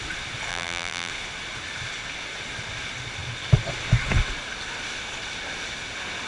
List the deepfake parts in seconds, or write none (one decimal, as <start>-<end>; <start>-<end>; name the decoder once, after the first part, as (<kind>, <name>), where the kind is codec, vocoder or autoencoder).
0.5-1.1 (vocoder, BigVGAN v2)